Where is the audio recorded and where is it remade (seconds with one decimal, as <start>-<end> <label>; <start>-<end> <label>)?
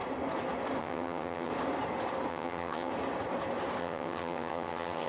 0.0-0.8 recorded; 0.8-1.5 remade; 1.5-2.3 recorded; 2.3-2.9 remade; 2.9-3.8 recorded; 3.8-5.1 remade